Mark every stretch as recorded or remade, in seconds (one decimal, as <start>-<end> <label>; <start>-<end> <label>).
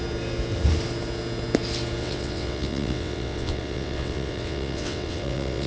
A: 0.0-2.0 recorded; 2.0-5.7 remade